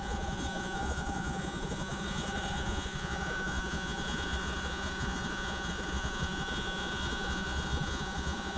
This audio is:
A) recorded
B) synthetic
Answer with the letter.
B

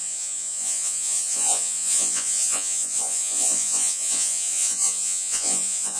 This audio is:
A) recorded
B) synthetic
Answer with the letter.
B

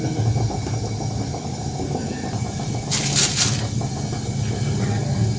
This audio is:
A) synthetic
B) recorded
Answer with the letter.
B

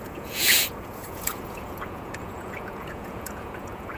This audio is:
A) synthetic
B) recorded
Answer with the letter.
A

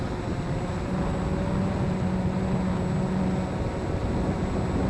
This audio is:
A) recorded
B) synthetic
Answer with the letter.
A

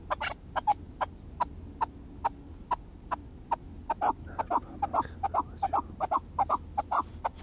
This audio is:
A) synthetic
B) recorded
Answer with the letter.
B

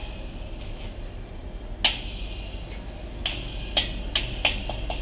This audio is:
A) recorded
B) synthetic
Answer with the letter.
A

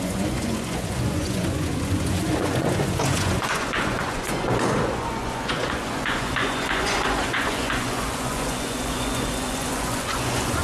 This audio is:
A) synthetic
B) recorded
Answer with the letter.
A